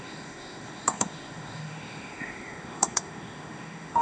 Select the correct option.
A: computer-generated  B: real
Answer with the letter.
A